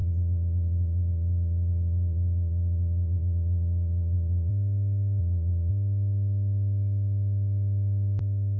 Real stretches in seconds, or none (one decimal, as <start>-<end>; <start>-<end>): 4.5-5.2; 5.7-8.6

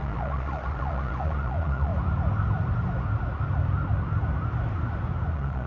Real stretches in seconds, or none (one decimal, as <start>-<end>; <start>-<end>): 1.9-5.3

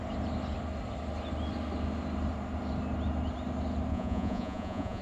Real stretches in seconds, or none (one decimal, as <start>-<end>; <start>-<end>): 0.0-3.9